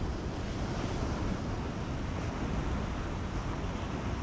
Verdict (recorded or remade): recorded